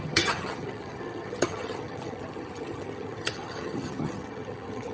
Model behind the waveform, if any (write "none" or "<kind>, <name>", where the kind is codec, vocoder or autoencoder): vocoder, HiFi-GAN